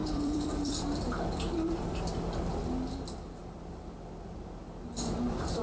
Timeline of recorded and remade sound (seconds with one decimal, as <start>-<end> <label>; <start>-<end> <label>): 0.0-2.0 remade; 2.0-5.6 recorded